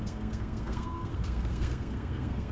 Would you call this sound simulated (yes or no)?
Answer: yes